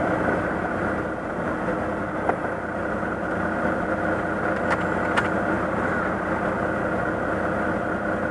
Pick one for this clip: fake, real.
real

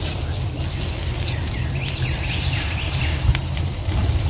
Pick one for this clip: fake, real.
fake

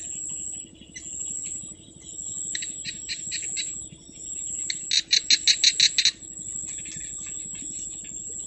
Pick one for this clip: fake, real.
real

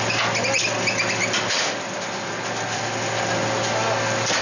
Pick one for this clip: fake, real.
real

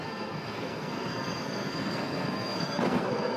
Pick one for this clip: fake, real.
fake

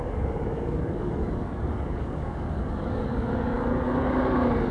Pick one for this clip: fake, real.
fake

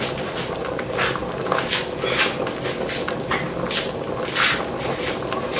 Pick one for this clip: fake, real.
real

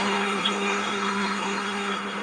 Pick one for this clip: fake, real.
fake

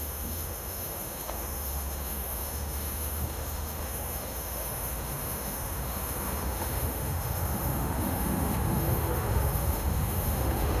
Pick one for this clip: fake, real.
fake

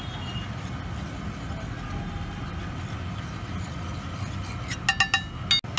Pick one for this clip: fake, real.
real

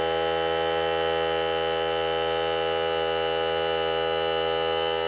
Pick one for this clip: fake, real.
real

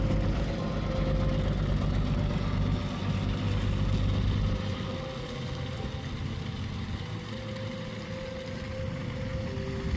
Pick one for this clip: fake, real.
real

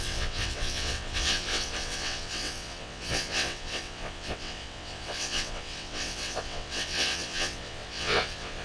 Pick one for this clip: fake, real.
fake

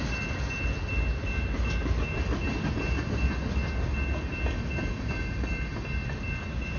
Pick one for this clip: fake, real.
real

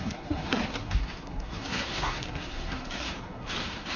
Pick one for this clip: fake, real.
fake